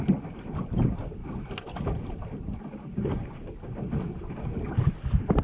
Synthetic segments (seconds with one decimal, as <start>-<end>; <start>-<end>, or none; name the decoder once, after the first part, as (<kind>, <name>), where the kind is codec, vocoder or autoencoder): 1.2-4.4 (vocoder, BigVGAN v2)